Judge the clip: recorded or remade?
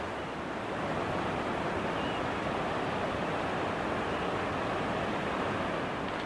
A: recorded